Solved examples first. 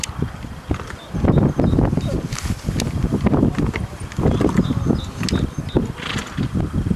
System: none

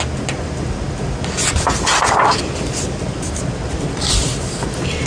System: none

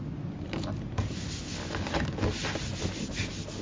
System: none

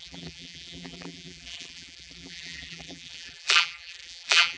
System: vocoder, BigVGAN v2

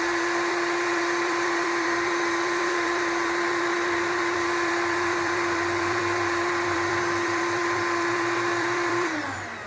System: vocoder, BigVGAN v2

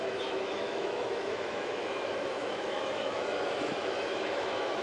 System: autoencoder, DAC-VAE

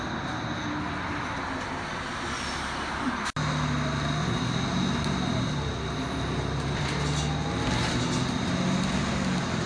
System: none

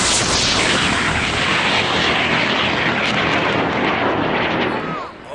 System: none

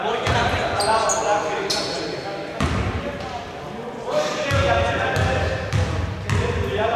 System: none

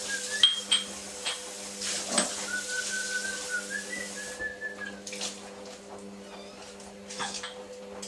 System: none